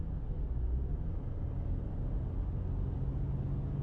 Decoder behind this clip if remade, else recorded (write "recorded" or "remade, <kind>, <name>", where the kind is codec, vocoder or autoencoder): recorded